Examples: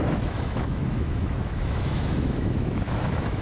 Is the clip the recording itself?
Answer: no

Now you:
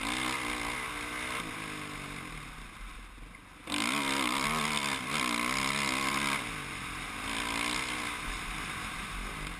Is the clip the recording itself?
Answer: yes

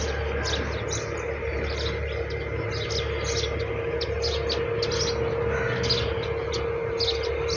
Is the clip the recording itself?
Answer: yes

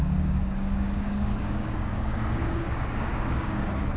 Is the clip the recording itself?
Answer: no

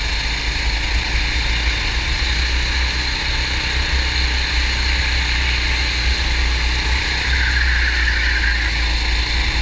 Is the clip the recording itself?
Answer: yes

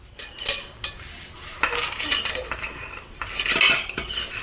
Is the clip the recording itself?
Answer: yes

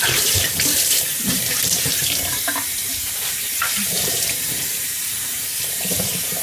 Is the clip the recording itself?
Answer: no